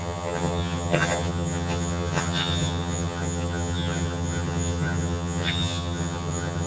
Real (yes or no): no